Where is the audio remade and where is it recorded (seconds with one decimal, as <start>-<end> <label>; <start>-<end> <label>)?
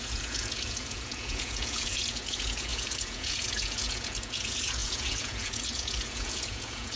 0.0-7.0 remade